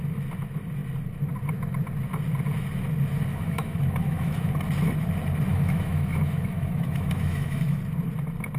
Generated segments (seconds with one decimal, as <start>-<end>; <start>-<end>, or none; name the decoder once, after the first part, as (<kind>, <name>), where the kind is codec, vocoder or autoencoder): 3.3-4.5 (autoencoder, DAC-VAE); 5.5-7.8